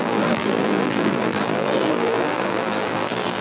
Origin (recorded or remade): remade